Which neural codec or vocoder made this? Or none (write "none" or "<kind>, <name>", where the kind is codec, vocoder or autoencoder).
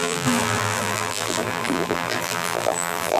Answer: vocoder, BigVGAN v2